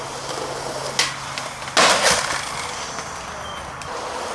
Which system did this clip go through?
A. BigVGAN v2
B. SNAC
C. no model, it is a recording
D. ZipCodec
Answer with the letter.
C